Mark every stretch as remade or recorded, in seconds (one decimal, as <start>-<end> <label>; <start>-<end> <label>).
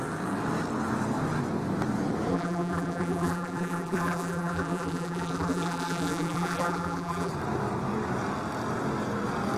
0.0-2.3 recorded; 2.3-7.3 remade; 7.3-9.6 recorded